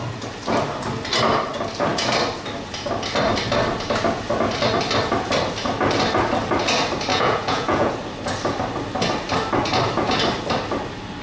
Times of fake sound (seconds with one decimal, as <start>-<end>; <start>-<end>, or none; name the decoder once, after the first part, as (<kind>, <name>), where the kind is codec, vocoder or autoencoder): 7.1-7.9 (vocoder, Vocos)